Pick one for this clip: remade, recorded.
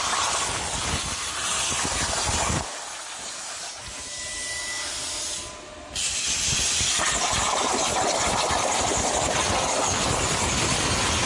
recorded